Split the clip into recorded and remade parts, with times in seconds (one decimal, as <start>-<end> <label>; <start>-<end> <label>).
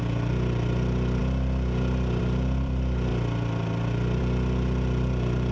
0.0-1.2 remade; 1.2-2.2 recorded; 2.2-3.1 remade; 3.1-4.2 recorded; 4.2-5.5 remade